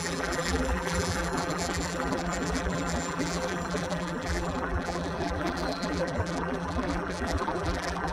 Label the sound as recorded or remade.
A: remade